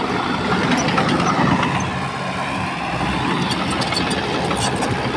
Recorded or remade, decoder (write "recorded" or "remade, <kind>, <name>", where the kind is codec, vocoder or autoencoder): recorded